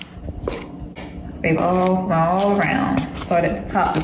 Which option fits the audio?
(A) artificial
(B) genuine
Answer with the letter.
B